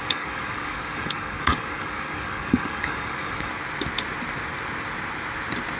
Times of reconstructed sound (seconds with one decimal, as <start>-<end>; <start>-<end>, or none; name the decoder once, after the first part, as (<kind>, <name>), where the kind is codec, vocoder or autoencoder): 0.0-3.5 (codec, DAC)